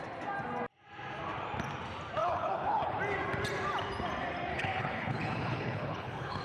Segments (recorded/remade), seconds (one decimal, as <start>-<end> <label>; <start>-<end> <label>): 0.0-2.2 recorded; 2.2-3.0 remade; 3.0-4.5 recorded; 4.5-6.4 remade